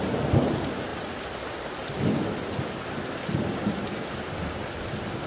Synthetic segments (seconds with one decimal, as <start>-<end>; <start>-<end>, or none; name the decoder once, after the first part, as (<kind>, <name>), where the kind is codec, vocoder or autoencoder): 0.9-4.1 (vocoder, BigVGAN v2)